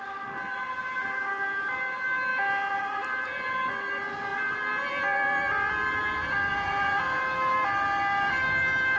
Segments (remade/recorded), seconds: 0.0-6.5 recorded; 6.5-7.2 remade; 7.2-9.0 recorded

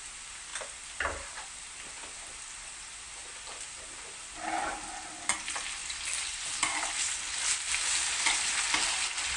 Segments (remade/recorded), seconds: 0.0-5.8 recorded; 5.8-7.3 remade; 7.3-9.4 recorded